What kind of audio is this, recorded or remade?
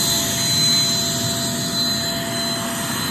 recorded